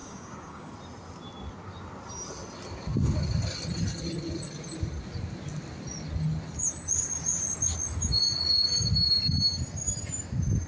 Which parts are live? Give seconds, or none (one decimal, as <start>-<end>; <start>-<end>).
0.7-10.7